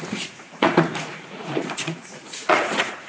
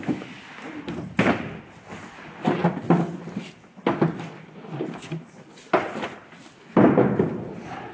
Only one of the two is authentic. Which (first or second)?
second